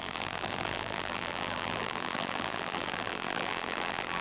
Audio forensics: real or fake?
fake